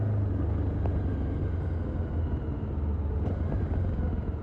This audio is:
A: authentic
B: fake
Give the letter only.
A